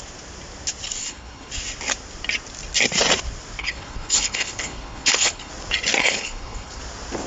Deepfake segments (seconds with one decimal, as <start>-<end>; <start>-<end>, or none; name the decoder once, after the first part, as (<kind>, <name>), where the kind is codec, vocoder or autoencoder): 1.0-1.5 (codec, HILCodec); 3.6-5.5; 6.0-6.8